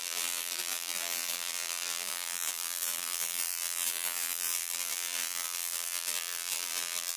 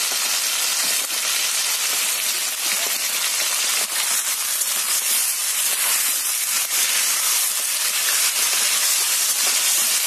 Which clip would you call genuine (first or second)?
second